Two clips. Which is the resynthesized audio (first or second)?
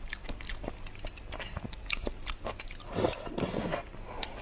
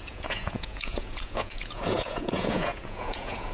second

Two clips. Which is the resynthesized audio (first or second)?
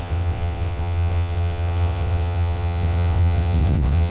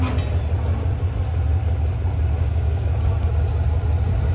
first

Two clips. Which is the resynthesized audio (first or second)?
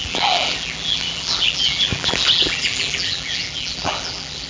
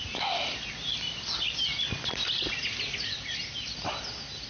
first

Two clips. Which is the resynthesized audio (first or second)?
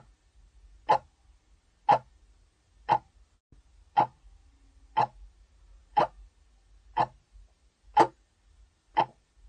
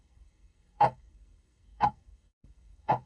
second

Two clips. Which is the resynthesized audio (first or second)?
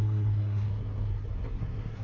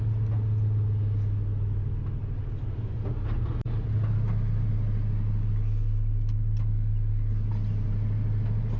first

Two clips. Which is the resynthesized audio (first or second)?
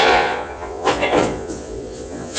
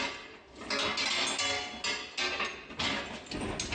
first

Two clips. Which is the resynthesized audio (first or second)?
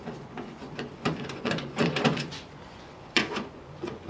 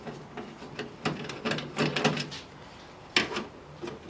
first